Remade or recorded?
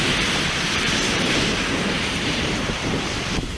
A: remade